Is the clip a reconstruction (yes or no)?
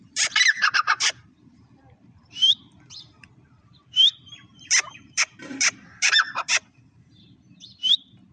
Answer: yes